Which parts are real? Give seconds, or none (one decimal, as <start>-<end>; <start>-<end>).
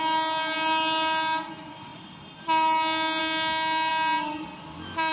0.0-5.1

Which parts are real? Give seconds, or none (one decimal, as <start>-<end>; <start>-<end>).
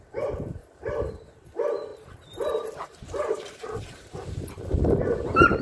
0.0-0.6; 1.1-1.9; 4.6-5.6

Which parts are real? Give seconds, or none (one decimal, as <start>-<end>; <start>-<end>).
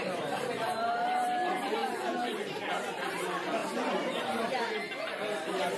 none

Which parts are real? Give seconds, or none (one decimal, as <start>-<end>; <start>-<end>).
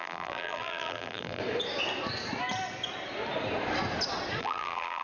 1.4-4.4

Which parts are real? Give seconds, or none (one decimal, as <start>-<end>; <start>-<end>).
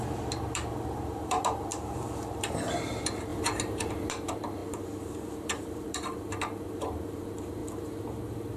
none